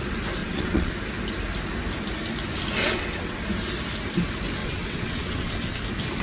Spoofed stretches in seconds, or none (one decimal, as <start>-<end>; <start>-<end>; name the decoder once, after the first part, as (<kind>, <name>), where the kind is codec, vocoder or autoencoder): 0.4-0.9 (vocoder, WaveNeXt); 2.8-3.4; 4.6-5.8